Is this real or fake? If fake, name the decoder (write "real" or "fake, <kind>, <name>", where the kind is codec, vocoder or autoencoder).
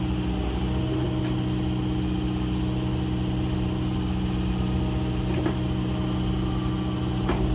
real